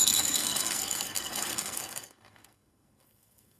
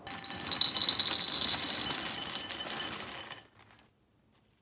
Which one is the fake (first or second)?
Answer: first